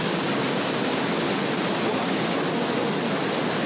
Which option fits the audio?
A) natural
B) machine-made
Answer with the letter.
A